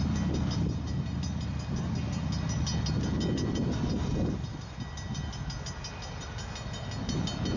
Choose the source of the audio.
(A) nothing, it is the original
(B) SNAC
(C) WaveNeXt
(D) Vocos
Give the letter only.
A